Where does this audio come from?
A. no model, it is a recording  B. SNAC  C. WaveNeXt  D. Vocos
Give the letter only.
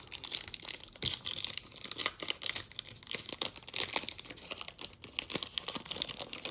A